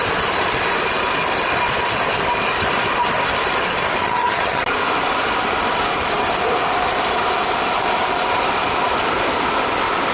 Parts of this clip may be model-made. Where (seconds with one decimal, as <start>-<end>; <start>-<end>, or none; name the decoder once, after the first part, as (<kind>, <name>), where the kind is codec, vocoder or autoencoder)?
4.0-4.6 (vocoder, HiFi-GAN)